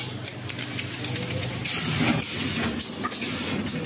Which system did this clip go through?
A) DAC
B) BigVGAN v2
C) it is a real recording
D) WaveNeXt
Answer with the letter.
C